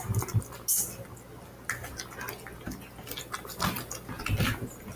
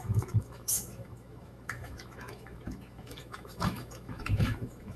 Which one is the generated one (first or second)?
second